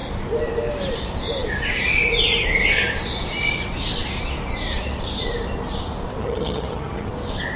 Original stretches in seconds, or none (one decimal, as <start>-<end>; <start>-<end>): 0.0-6.2; 7.1-7.6